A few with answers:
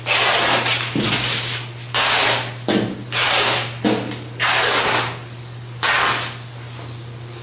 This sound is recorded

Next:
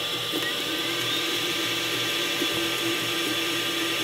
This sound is remade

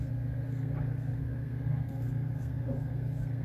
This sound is remade